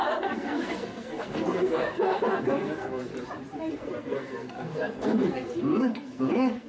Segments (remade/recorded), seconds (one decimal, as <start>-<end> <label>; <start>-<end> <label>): 0.0-3.1 remade; 3.1-3.7 recorded; 3.7-6.7 remade